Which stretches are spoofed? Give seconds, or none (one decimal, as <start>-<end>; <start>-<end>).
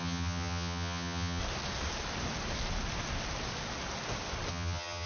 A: 0.0-1.4; 4.5-5.1